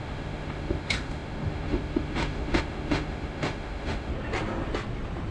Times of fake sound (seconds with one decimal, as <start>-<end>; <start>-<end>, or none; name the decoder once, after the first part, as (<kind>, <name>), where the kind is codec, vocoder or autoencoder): 0.0-4.1 (autoencoder, DAC-VAE)